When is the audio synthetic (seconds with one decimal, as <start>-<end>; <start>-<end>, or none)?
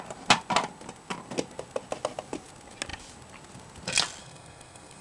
4.2-5.0